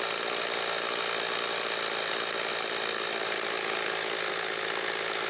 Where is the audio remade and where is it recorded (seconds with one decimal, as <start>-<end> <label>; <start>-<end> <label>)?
0.0-5.3 recorded